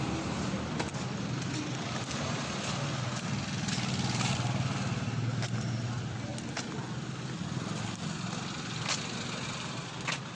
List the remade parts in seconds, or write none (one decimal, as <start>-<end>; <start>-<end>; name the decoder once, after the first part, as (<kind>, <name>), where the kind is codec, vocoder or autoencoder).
none